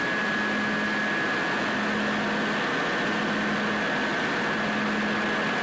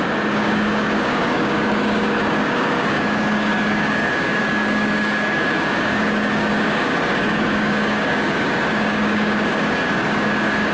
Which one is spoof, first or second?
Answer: second